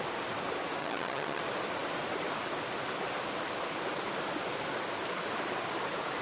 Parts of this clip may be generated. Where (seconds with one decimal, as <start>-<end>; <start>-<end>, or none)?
0.8-1.4